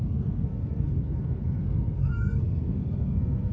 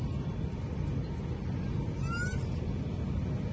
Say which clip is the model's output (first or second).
first